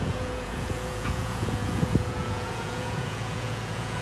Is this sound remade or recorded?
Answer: remade